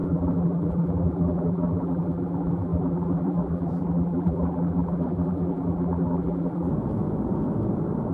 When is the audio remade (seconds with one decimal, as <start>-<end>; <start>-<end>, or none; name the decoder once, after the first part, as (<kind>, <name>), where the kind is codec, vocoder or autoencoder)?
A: 0.0-6.7 (vocoder, BigVGAN v2)